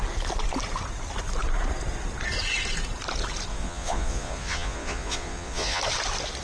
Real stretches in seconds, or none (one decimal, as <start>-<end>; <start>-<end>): 0.0-3.5; 5.8-6.4

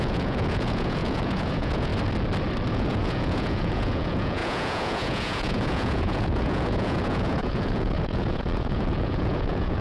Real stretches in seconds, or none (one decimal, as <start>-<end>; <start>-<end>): 1.9-2.7

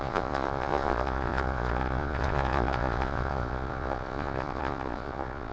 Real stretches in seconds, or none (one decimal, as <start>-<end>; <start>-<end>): none

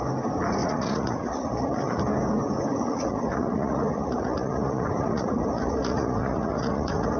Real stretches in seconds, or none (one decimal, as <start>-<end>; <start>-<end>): 0.0-0.6; 2.0-2.7

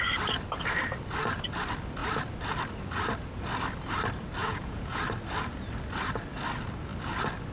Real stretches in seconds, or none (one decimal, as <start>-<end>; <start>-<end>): 0.0-4.4; 5.0-7.5

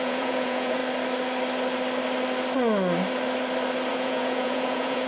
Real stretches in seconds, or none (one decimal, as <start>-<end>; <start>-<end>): 0.8-3.9

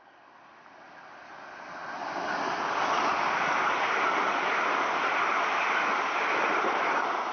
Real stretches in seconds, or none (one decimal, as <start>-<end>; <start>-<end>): 0.0-7.3